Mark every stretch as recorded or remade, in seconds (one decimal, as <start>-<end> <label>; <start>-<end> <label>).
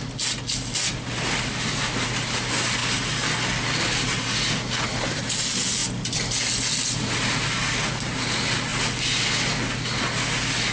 0.0-10.7 recorded